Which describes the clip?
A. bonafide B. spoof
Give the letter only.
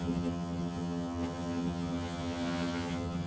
B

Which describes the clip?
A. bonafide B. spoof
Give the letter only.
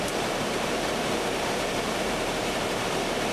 B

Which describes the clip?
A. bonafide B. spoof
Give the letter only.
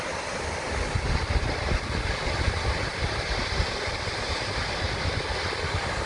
A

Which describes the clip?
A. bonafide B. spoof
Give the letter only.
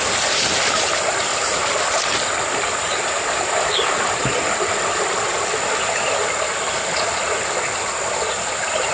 A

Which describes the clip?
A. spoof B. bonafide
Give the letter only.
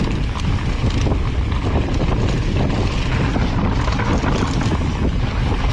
B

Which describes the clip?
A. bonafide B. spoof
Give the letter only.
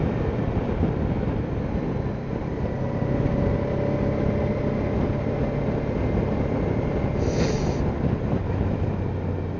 A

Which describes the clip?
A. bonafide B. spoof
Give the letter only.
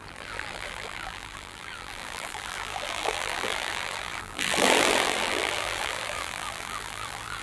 B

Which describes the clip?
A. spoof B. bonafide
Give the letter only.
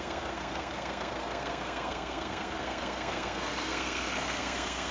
A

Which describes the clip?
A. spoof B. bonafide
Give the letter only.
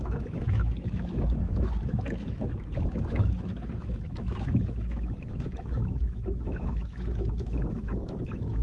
A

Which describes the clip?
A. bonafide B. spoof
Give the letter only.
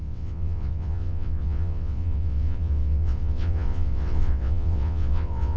B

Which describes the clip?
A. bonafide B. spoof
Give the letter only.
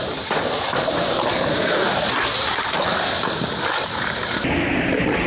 B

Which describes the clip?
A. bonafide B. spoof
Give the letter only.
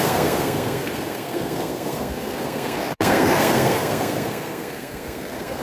B